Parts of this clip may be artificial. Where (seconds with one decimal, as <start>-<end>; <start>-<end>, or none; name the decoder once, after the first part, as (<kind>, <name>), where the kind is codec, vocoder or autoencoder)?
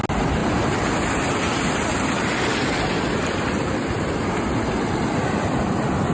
none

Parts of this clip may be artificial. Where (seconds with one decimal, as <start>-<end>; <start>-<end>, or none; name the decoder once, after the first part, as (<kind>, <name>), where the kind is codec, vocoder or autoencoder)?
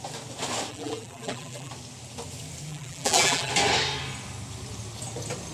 0.7-1.7 (vocoder, BigVGAN v2); 2.7-3.5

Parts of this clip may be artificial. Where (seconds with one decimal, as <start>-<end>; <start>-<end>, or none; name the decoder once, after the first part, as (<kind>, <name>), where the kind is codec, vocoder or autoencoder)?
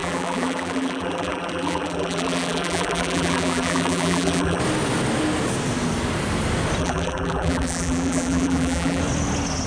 0.0-4.6 (vocoder, BigVGAN v2); 6.8-9.0